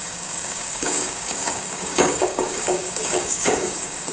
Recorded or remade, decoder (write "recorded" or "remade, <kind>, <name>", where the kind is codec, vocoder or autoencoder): remade, codec, DAC